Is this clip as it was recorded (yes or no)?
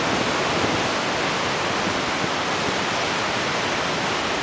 yes